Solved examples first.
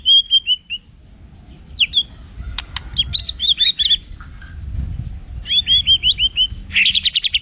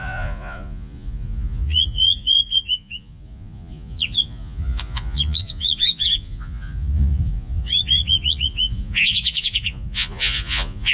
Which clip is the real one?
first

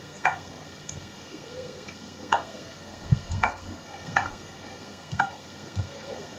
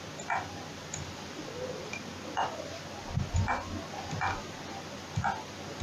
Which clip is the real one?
second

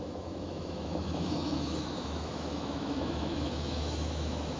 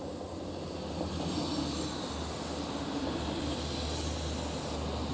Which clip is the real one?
second